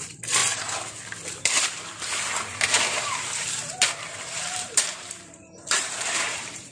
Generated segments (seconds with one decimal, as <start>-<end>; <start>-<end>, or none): 0.0-0.4; 1.3-6.7